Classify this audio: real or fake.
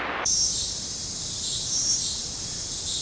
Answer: fake